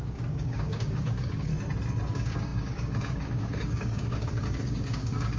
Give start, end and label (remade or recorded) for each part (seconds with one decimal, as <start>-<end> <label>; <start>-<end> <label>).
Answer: 0.0-1.5 remade; 1.5-2.1 recorded; 2.1-5.4 remade